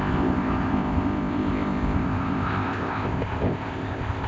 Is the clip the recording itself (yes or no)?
no